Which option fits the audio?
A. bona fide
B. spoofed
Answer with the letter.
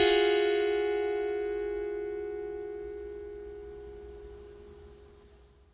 A